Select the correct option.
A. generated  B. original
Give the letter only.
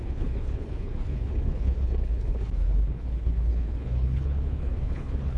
A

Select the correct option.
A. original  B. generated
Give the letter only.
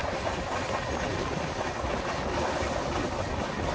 A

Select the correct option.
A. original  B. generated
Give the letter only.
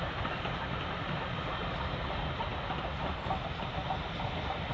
A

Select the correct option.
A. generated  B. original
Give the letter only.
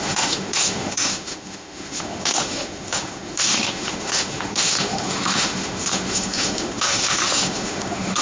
A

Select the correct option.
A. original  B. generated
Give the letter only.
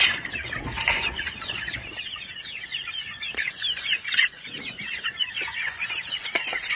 B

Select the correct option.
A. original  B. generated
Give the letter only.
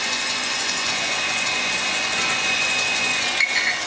B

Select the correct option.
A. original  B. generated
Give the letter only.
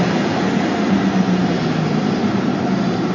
A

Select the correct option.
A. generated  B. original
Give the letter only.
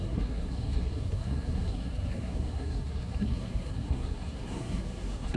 A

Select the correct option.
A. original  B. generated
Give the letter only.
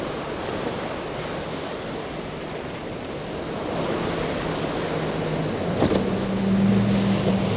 A